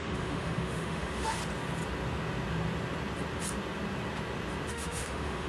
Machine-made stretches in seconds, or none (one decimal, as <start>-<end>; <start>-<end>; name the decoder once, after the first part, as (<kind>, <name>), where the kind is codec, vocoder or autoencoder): 0.0-1.4 (autoencoder, DAC-VAE); 4.7-5.5